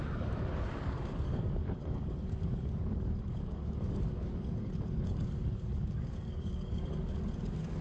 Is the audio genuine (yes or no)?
no